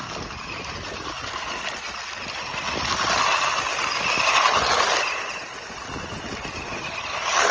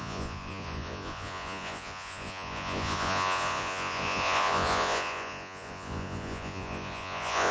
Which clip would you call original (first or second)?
first